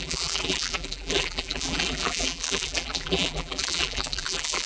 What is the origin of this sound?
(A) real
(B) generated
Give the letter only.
B